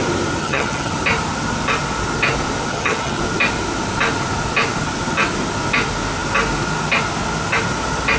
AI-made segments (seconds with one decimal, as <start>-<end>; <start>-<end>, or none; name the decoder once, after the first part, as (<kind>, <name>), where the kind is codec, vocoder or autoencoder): 0.4-0.9 (vocoder, HiFi-GAN); 2.7-3.2